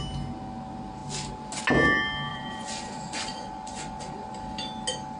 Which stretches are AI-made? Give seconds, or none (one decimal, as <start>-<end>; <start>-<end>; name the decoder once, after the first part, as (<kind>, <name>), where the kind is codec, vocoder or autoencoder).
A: 2.3-4.3 (vocoder, Vocos)